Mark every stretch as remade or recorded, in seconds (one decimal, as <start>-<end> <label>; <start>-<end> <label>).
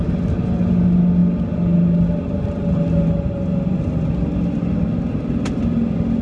0.0-6.2 recorded